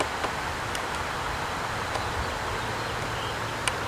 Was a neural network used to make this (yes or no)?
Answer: no